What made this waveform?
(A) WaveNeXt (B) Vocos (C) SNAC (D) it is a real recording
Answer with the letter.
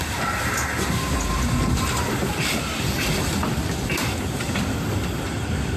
D